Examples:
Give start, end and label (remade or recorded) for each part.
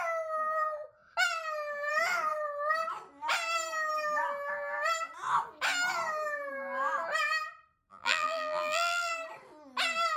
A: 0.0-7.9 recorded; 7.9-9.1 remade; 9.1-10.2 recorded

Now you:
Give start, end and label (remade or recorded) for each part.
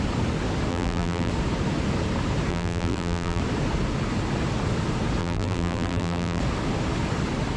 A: 0.0-0.7 recorded; 0.7-1.3 remade; 1.3-2.5 recorded; 2.5-3.4 remade; 3.4-5.2 recorded; 5.2-6.4 remade; 6.4-7.6 recorded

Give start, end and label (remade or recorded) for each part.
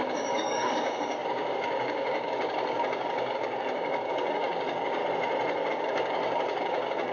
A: 0.0-5.0 remade; 5.0-5.7 recorded; 5.7-7.1 remade